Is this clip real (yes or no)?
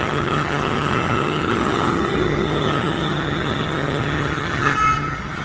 no